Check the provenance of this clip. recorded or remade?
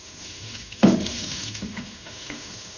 remade